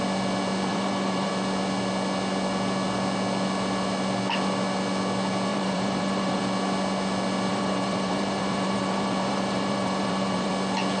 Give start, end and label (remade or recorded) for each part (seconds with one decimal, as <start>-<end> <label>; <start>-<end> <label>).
0.0-0.7 recorded; 0.7-1.3 remade; 1.3-5.5 recorded; 5.5-6.4 remade; 6.4-7.5 recorded; 7.5-10.5 remade; 10.5-11.0 recorded